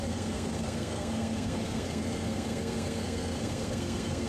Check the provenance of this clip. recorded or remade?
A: remade